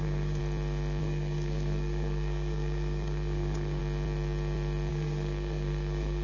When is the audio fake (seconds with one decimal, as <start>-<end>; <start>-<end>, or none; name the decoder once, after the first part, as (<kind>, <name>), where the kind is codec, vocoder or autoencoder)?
0.0-0.4 (codec, SNAC); 1.0-3.8; 4.9-6.2